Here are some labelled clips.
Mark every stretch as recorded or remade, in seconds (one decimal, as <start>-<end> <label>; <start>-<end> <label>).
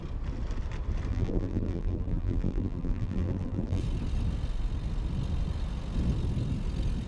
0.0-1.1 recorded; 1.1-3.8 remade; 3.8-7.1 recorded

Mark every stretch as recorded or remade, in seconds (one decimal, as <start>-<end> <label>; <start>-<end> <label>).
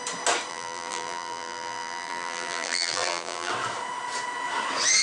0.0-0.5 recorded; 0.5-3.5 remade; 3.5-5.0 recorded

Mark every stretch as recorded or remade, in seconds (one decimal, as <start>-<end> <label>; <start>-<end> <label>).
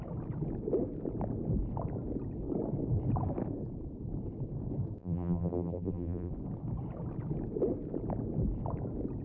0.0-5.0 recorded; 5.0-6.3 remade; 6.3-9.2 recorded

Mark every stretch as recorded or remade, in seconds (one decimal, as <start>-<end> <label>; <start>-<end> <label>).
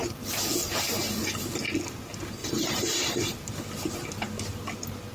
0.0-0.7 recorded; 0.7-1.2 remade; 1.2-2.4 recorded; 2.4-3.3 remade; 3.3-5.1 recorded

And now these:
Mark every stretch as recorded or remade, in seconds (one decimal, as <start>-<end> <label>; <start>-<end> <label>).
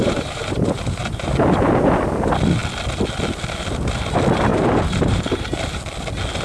0.0-1.3 remade; 1.3-4.5 recorded; 4.5-5.8 remade; 5.8-6.4 recorded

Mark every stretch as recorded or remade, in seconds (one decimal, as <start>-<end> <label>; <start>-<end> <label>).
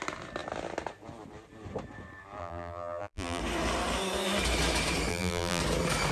0.0-2.4 recorded; 2.4-3.4 remade; 3.4-5.1 recorded; 5.1-5.6 remade; 5.6-6.1 recorded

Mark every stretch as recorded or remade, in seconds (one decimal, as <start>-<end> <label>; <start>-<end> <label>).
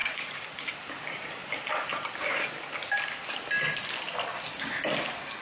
0.0-0.7 remade; 0.7-5.4 recorded